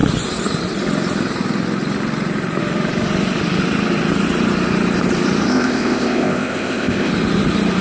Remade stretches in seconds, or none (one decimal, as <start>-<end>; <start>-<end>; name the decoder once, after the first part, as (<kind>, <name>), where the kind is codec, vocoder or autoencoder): 5.5-7.1 (codec, ZipCodec)